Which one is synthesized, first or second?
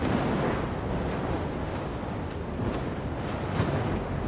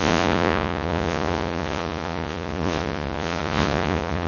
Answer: second